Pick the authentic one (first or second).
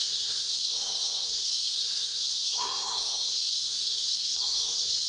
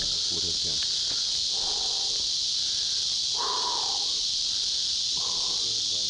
second